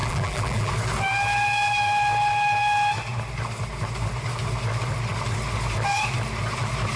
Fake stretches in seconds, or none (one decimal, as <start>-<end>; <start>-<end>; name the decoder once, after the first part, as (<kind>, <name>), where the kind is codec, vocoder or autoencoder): 0.0-0.7 (vocoder, BigVGAN v2)